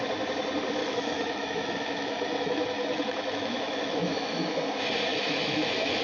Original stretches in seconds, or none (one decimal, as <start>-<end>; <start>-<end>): 0.0-0.8; 4.4-5.1